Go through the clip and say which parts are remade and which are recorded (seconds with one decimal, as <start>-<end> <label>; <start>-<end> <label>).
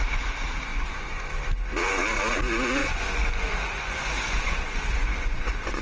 0.0-0.7 recorded; 0.7-1.3 remade; 1.3-2.8 recorded; 2.8-5.8 remade